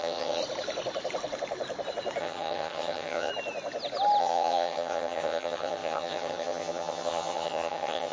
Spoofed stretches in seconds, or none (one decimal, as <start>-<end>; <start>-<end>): 0.0-0.4; 2.2-3.3; 4.2-8.1